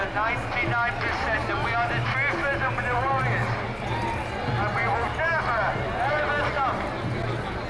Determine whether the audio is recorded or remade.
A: recorded